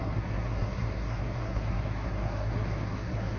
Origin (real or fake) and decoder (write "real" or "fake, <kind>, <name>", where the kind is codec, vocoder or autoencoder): fake, codec, SNAC